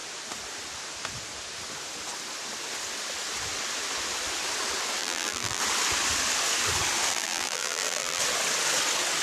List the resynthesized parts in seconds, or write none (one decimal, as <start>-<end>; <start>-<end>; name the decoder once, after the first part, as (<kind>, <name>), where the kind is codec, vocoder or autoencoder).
5.0-5.6 (vocoder, BigVGAN v2); 7.1-8.2